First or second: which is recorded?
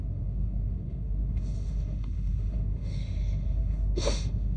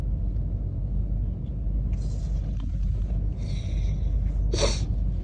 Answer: second